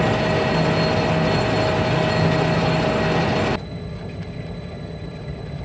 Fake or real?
real